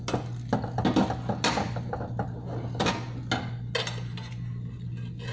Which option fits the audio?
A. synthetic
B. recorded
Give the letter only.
B